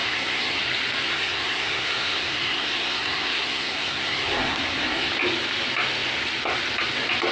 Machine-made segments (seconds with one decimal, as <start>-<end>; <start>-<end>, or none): 0.0-0.6; 1.1-5.1